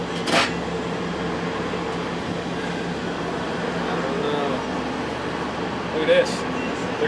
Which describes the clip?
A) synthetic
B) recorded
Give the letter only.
B